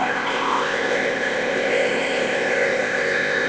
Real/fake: fake